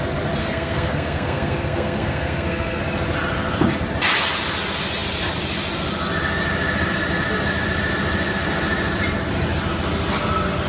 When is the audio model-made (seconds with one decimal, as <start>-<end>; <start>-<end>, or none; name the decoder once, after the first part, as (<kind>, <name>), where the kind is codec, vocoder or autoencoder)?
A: 0.4-2.8 (codec, SNAC)